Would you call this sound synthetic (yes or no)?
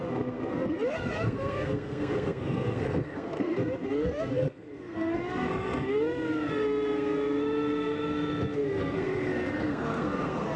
yes